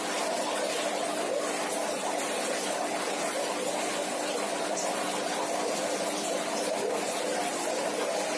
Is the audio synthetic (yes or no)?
no